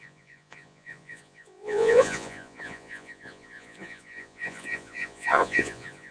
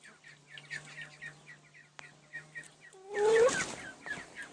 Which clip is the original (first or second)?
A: second